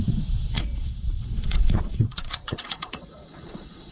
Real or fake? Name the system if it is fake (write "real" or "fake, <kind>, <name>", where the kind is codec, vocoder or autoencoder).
fake, vocoder, Vocos